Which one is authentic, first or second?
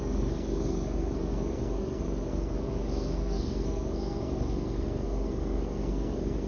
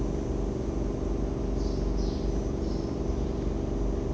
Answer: second